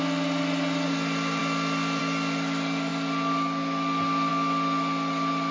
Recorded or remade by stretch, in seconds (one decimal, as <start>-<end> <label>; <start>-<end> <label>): 0.0-5.5 recorded